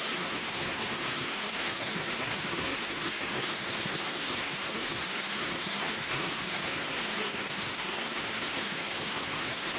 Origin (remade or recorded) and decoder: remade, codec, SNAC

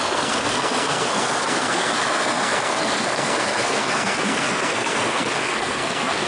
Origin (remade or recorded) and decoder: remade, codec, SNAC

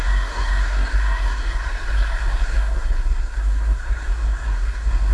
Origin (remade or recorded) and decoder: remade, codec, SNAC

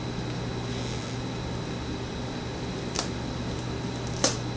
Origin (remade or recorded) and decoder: recorded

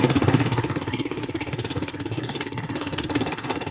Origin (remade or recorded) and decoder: remade, codec, SNAC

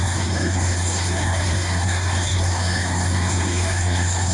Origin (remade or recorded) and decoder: remade, codec, SNAC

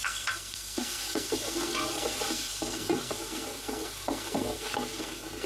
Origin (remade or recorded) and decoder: remade, codec, SNAC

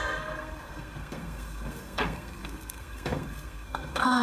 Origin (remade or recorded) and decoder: remade, codec, SNAC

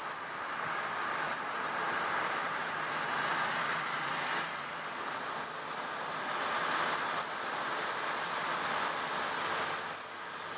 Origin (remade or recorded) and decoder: recorded